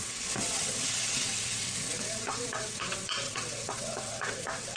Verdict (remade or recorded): remade